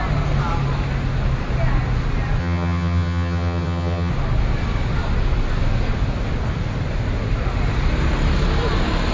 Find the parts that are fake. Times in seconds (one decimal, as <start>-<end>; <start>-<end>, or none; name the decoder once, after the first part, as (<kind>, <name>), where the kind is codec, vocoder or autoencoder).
2.4-4.1 (vocoder, HiFi-GAN)

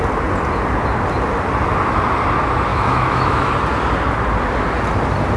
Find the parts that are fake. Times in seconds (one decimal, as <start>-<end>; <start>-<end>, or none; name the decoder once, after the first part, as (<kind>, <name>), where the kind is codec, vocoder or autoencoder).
2.7-3.5 (autoencoder, DAC-VAE)

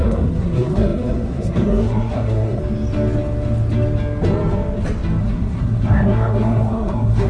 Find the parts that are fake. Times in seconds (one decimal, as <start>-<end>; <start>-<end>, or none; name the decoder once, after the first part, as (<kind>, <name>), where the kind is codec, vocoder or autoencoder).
0.0-2.6 (codec, SNAC); 5.2-7.3

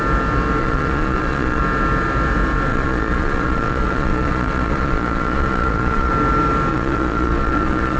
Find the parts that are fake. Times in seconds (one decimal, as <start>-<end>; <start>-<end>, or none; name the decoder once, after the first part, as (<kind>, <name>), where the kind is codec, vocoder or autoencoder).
0.6-1.6 (vocoder, Vocos); 2.7-6.1; 6.7-8.0